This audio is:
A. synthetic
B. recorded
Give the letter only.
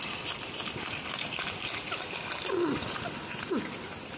B